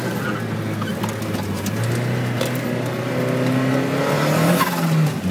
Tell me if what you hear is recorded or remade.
recorded